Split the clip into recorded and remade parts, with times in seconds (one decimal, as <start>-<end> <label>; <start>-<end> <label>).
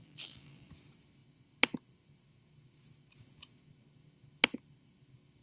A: 0.0-0.7 remade; 0.7-5.4 recorded